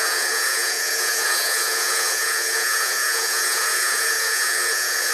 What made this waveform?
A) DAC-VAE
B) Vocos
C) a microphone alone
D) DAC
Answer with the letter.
B